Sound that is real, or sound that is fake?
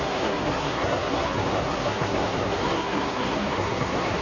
fake